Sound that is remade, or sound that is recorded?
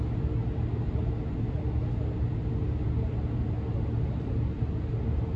recorded